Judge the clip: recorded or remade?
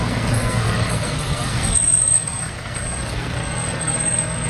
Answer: remade